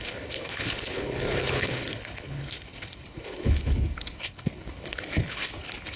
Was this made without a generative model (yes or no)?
no